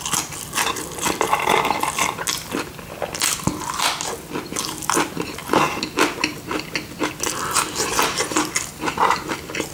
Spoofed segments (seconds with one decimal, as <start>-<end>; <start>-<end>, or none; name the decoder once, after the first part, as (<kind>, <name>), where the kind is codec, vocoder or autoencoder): none